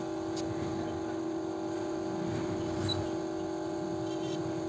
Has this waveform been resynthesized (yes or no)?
no